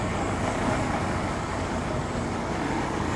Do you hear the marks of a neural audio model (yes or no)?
yes